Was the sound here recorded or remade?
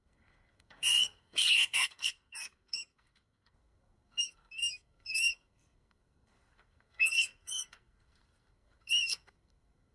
remade